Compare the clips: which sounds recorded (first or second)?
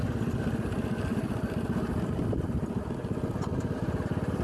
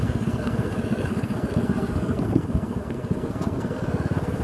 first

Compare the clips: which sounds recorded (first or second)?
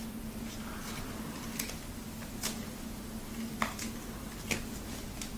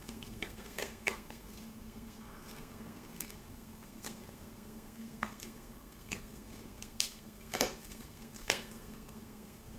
first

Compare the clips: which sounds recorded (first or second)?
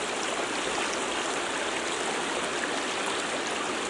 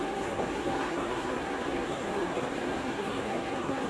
first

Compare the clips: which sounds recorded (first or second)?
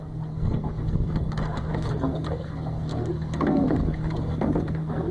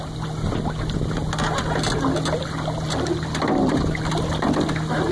second